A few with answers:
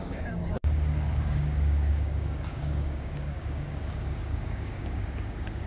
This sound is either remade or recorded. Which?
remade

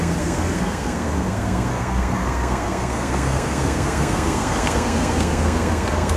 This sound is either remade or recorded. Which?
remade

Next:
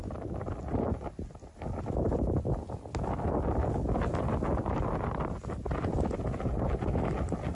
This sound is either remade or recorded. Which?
recorded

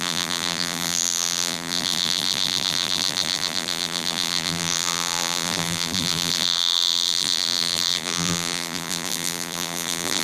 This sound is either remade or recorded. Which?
remade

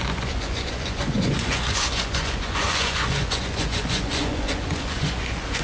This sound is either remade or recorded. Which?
remade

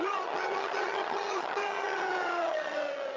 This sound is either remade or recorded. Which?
remade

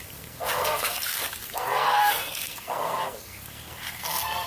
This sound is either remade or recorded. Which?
remade